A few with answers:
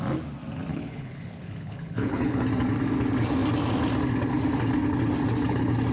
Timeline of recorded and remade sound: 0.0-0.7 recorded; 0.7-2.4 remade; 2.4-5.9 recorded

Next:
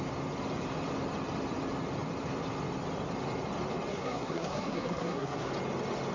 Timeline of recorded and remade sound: 0.0-3.9 recorded; 3.9-5.5 remade; 5.5-6.1 recorded